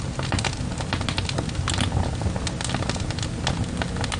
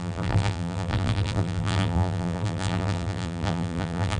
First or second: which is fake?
second